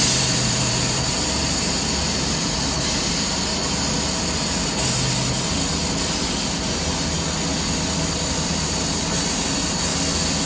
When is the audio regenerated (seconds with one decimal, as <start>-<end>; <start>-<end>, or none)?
0.0-3.5; 8.3-9.9